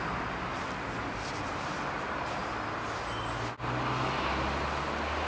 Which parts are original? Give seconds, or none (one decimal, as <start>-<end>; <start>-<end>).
0.0-1.0; 2.5-5.3